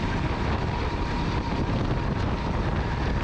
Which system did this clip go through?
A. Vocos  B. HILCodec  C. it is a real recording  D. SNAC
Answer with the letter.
C